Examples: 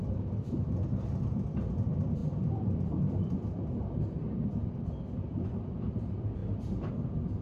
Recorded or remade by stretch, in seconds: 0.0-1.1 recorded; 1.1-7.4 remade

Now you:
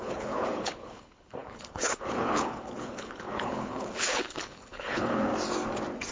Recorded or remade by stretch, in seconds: 0.0-5.3 remade; 5.3-6.1 recorded

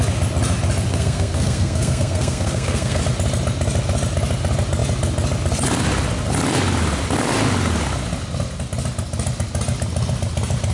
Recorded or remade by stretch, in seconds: 0.0-0.9 recorded; 0.9-3.0 remade; 3.0-10.7 recorded

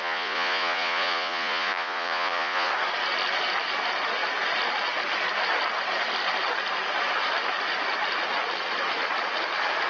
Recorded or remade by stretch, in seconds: 0.0-2.7 remade; 2.7-9.9 recorded

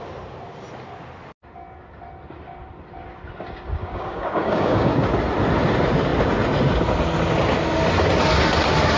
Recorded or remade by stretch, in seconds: 0.0-3.8 recorded; 3.8-4.9 remade; 4.9-9.0 recorded

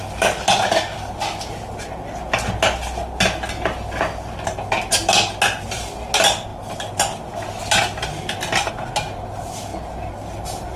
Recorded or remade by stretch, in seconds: 0.0-10.8 recorded